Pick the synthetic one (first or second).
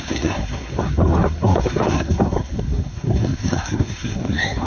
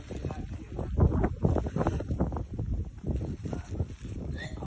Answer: first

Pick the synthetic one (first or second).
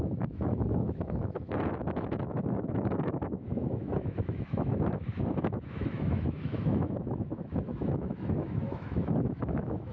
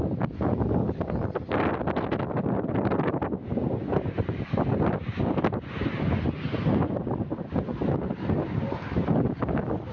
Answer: first